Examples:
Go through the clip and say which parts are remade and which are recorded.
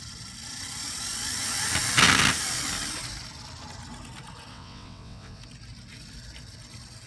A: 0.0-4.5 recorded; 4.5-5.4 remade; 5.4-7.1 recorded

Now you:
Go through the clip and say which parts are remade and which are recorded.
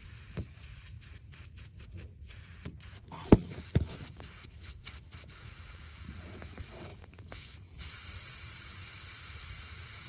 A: 0.0-10.1 remade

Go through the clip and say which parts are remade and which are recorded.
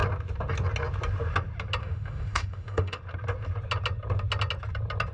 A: 0.0-1.8 recorded; 1.8-3.0 remade; 3.0-5.1 recorded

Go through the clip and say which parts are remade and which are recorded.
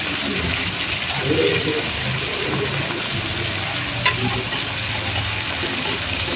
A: 0.0-6.4 recorded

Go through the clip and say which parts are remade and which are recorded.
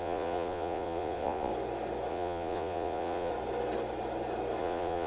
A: 0.0-1.5 remade; 1.5-2.1 recorded; 2.1-3.3 remade; 3.3-4.6 recorded; 4.6-5.1 remade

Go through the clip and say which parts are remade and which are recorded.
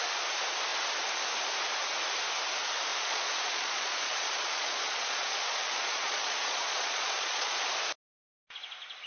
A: 0.0-2.9 recorded; 2.9-7.6 remade; 7.6-9.1 recorded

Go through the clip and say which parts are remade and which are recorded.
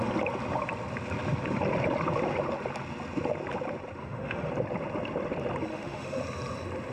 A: 0.0-4.0 recorded; 4.0-4.5 remade; 4.5-5.7 recorded; 5.7-6.2 remade; 6.2-6.9 recorded